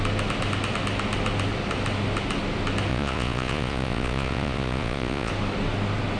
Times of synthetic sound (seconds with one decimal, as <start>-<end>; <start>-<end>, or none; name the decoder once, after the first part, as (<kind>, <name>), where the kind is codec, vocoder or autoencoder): 2.9-5.3 (vocoder, Vocos)

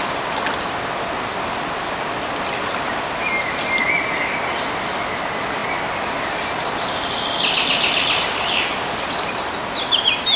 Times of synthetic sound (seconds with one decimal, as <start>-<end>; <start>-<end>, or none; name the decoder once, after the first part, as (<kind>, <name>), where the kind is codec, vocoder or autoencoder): none

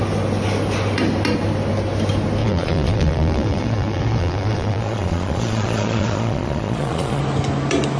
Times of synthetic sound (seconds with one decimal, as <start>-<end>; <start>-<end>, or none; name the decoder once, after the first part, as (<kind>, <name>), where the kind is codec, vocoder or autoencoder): 2.4-7.2 (vocoder, Vocos)

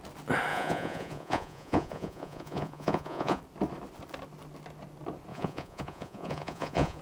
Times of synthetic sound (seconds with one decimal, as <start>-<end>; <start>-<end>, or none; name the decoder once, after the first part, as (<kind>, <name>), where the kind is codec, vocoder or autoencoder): 0.5-3.4 (vocoder, Vocos); 5.3-7.0

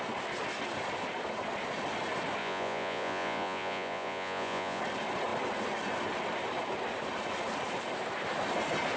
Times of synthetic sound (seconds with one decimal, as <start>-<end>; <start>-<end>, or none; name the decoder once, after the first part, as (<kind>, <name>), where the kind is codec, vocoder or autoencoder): 2.4-4.8 (vocoder, Vocos)

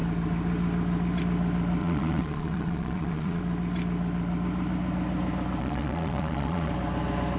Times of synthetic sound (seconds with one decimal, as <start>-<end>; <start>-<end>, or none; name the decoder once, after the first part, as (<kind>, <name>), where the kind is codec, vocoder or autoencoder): 1.8-3.4 (vocoder, Vocos); 5.6-6.7

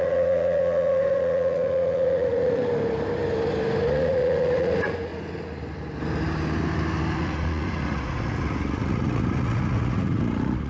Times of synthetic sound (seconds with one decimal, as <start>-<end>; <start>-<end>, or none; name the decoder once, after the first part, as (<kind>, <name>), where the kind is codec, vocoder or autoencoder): 0.0-2.6 (vocoder, Vocos); 3.9-5.1; 7.2-10.7

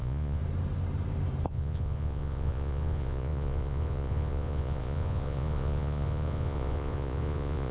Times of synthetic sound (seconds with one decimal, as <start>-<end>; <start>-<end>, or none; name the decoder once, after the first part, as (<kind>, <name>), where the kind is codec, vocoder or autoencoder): 0.0-0.4 (vocoder, Vocos); 1.5-7.7